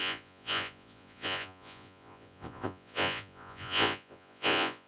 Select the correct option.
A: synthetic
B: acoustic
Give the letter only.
A